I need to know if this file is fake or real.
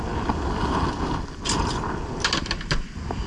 real